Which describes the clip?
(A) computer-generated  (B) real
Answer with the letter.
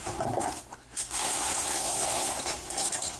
A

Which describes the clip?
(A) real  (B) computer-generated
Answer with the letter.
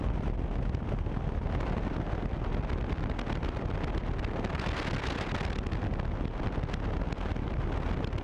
A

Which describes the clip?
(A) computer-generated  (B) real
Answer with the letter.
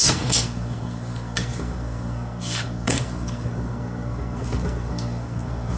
A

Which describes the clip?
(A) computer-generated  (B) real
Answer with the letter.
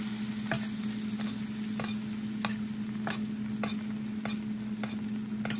B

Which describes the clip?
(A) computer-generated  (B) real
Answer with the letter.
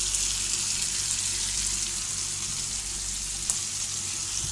B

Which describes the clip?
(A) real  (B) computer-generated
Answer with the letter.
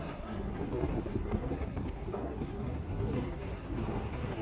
B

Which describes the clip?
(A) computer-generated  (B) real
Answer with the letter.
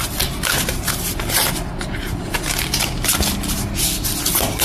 B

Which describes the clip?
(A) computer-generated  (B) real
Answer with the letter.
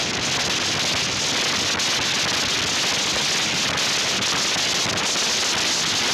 B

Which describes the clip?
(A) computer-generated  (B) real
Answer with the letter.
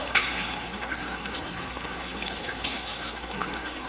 A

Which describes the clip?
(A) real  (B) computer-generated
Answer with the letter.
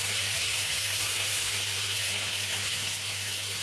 B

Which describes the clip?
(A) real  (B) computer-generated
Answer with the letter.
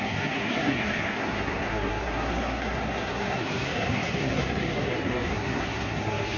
B